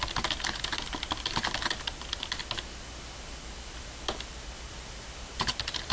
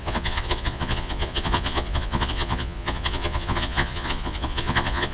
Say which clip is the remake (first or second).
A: second